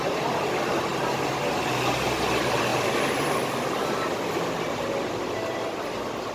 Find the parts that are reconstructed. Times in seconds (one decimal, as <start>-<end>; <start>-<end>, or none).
none